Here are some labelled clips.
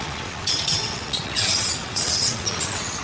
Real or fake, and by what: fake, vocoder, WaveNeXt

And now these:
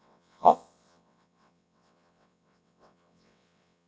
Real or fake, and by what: fake, vocoder, WaveNeXt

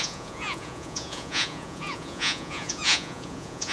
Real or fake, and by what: fake, vocoder, Vocos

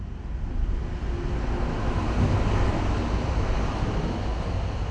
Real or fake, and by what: real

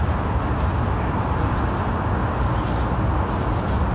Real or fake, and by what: real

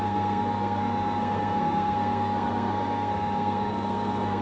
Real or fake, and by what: fake, codec, SNAC